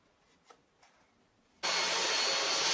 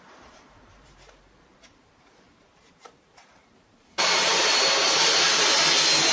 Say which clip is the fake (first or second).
second